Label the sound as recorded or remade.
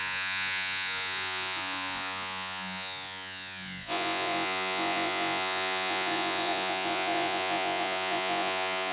remade